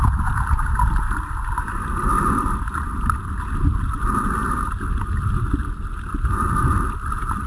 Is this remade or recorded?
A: recorded